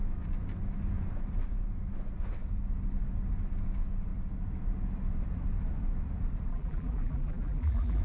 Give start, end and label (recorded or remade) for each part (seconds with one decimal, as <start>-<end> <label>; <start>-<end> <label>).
0.0-6.5 recorded; 6.5-8.0 remade